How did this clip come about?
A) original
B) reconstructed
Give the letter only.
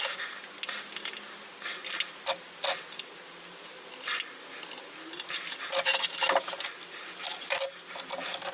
A